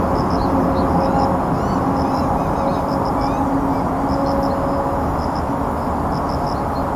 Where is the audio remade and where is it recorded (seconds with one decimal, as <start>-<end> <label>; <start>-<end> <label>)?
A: 0.0-7.0 recorded